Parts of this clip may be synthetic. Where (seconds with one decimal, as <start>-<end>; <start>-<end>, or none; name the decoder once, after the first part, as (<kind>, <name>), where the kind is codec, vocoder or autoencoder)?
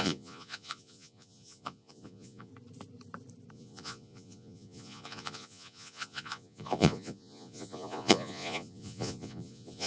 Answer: 0.0-2.5 (vocoder, Vocos); 3.5-9.9